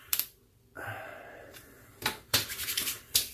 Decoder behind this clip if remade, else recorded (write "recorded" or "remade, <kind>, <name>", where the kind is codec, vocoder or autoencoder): remade, vocoder, BigVGAN v2